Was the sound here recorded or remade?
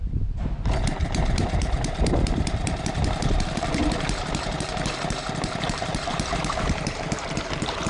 remade